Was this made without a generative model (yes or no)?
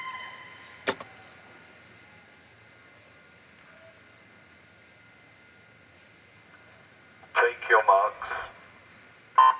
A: yes